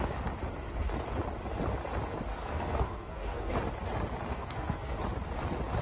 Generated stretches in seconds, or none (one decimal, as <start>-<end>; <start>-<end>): 2.3-3.5; 4.3-5.0